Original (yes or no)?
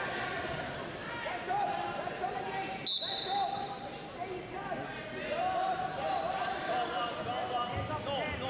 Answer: yes